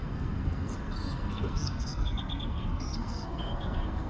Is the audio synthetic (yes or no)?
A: yes